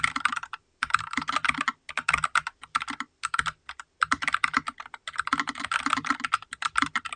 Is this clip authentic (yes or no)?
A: yes